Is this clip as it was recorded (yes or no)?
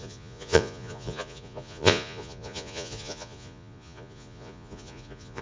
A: no